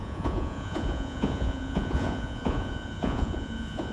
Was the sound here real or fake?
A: fake